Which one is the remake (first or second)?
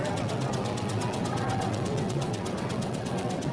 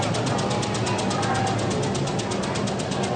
first